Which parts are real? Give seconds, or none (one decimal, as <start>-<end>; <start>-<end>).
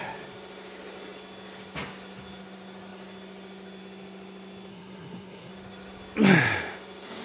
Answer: 0.0-4.7; 5.5-7.2